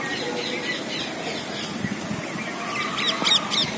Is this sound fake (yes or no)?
no